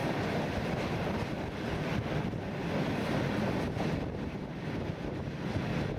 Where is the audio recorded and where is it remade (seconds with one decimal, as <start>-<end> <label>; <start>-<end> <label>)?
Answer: 0.0-3.6 remade; 3.6-6.0 recorded